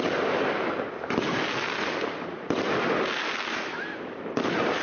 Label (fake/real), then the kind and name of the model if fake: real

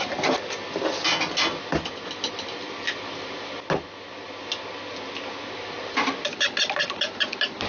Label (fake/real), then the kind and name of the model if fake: real